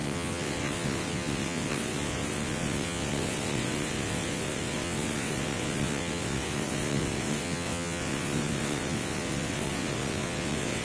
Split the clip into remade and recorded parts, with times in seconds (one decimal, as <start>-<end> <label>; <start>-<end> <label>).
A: 0.0-10.8 remade